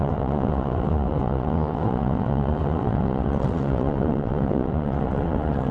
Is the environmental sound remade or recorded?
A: remade